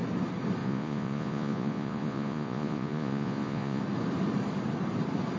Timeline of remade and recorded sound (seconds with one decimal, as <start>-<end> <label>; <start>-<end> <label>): 0.0-0.6 recorded; 0.6-3.8 remade; 3.8-5.4 recorded